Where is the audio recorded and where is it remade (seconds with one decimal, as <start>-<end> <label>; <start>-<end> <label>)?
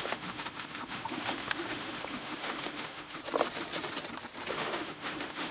0.0-3.2 remade; 3.2-4.5 recorded; 4.5-5.5 remade